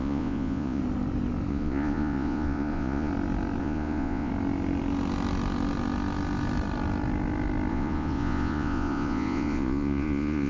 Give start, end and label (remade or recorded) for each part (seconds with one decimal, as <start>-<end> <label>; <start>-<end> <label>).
0.0-0.8 remade; 0.8-1.5 recorded; 1.5-3.1 remade; 3.1-3.6 recorded; 3.6-4.3 remade; 4.3-7.7 recorded; 7.7-10.5 remade